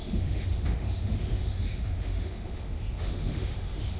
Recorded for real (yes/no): no